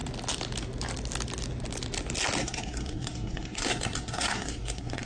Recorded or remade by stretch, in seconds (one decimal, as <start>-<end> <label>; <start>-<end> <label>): 0.0-2.4 recorded; 2.4-5.1 remade